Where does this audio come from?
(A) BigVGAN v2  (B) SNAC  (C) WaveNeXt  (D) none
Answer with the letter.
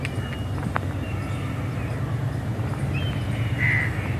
D